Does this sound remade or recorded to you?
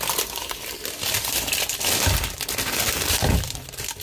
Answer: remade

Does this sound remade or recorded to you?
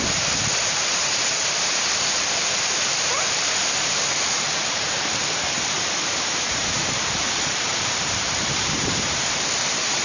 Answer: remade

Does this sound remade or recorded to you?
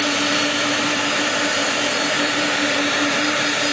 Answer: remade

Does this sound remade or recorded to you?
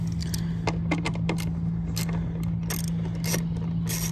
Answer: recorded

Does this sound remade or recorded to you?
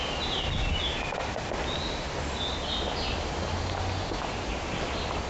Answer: recorded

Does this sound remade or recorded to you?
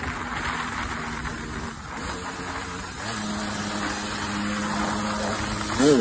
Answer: recorded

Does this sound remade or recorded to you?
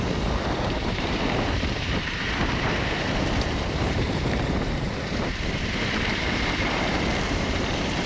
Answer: remade